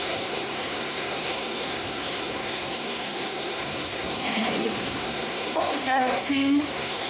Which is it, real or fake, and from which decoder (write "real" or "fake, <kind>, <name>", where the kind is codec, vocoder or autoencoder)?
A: fake, codec, SNAC